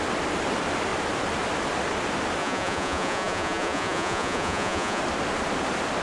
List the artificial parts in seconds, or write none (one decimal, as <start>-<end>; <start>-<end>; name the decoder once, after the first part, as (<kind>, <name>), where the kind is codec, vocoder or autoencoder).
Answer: 2.4-5.0 (vocoder, Vocos)